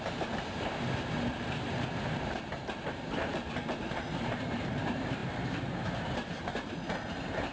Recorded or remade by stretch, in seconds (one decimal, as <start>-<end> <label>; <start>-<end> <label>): 0.0-7.5 remade